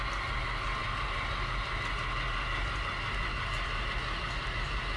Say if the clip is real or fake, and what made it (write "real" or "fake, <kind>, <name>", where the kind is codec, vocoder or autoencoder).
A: real